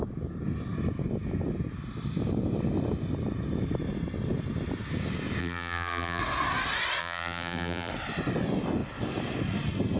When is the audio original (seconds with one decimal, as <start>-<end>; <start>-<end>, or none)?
0.0-5.4; 6.2-7.0; 7.9-10.0